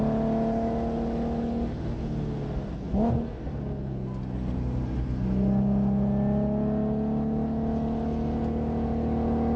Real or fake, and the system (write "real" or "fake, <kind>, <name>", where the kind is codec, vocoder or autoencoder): real